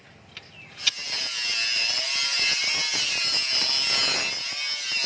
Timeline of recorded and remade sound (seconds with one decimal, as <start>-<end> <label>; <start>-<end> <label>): 0.0-5.1 recorded